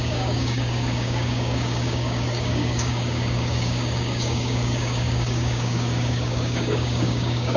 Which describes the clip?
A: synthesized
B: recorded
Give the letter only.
A